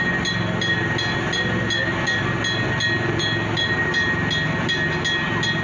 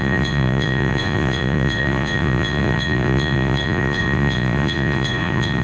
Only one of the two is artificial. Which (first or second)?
second